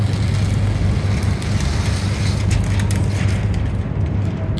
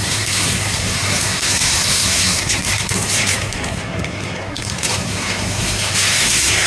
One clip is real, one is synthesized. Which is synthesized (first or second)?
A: second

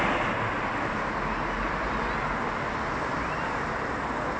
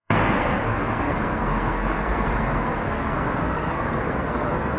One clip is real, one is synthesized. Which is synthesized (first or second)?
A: second